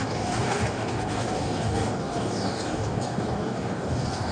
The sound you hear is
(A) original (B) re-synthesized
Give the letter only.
B